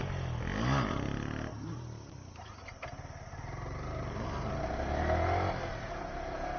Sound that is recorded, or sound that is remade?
recorded